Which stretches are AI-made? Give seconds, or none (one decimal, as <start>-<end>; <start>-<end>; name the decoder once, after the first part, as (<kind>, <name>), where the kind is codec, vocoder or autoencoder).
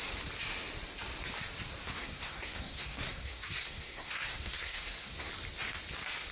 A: 1.8-5.3 (codec, SNAC)